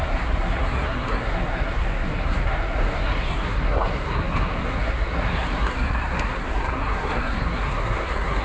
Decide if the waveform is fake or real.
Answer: fake